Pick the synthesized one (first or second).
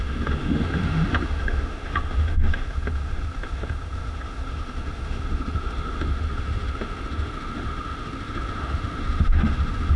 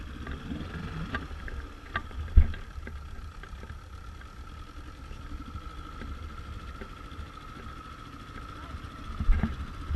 first